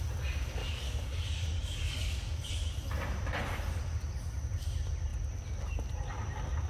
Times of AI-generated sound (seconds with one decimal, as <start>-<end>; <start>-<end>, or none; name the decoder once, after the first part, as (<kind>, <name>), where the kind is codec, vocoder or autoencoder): 0.6-2.5 (codec, DAC)